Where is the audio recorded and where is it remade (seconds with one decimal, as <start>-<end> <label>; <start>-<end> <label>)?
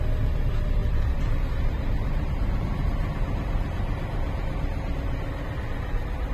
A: 0.0-0.8 recorded; 0.8-2.3 remade; 2.3-6.3 recorded